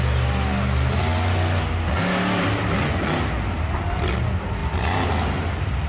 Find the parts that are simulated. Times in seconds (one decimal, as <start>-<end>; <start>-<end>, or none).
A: none